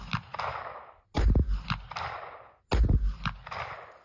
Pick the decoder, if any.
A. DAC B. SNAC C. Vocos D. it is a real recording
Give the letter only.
D